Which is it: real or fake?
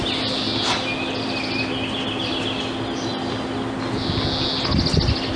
real